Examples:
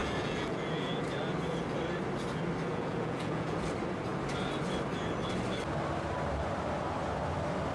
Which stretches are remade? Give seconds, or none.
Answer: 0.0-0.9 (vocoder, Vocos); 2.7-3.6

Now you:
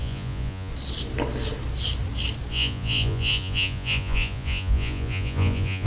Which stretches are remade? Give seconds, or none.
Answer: 0.0-0.7 (vocoder, Vocos); 2.5-5.9

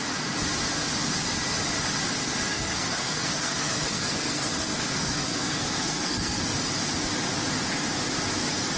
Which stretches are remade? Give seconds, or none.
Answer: 2.5-6.4 (codec, SNAC)

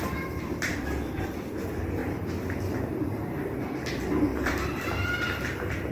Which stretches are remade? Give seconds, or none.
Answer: 0.7-1.5 (vocoder, BigVGAN v2); 2.0-3.9; 4.3-5.2

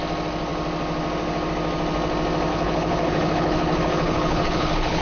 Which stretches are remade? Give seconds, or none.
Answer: 2.5-5.0 (codec, HILCodec)

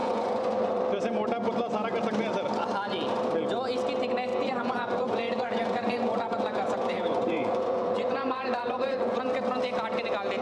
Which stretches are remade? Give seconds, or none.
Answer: 0.0-0.8 (vocoder, Vocos); 4.3-9.2

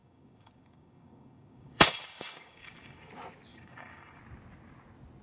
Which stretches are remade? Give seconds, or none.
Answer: 0.0-3.1 (codec, DAC); 3.5-4.2